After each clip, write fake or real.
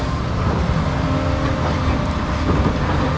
real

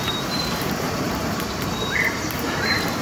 fake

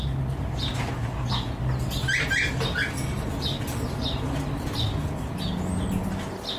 real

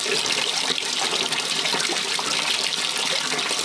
real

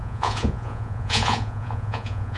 fake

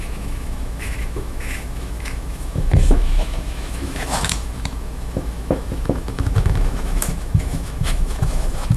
fake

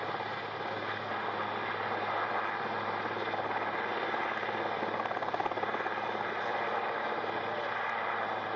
real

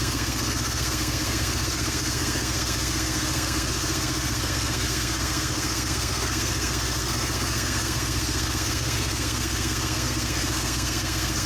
fake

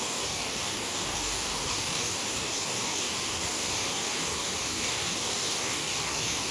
fake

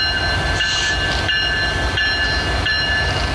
real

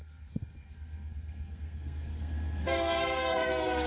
fake